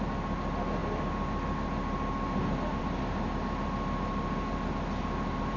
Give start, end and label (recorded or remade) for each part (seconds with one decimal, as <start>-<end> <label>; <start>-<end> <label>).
0.0-5.6 recorded